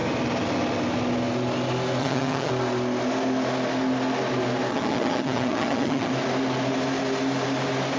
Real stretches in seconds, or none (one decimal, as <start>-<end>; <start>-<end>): 0.0-2.0; 2.5-4.7; 6.1-8.0